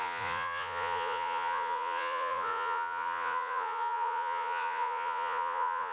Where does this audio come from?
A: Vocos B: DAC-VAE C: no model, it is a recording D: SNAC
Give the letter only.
A